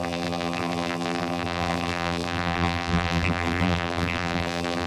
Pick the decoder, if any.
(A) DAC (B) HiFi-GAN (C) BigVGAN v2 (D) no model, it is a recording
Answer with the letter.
C